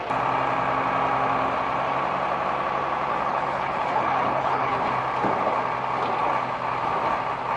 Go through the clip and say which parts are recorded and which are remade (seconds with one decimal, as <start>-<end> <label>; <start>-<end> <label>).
0.0-3.1 recorded; 3.1-4.8 remade; 4.8-7.6 recorded